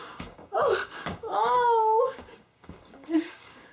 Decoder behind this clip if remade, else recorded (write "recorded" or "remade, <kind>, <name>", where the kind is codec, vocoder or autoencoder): remade, codec, DAC